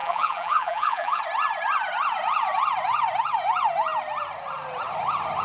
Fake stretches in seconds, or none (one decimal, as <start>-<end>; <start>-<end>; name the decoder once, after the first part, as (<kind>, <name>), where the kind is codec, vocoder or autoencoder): 0.0-1.2 (vocoder, BigVGAN v2)